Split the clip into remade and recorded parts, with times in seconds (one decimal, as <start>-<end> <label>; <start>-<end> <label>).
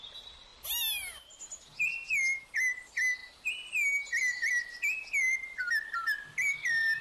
0.0-7.0 recorded